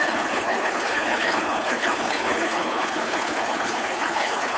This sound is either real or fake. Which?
fake